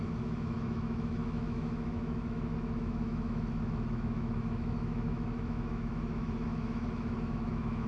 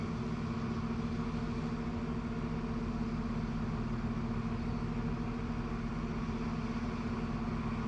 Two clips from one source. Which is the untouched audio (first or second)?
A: second